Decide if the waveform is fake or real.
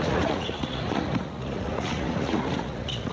fake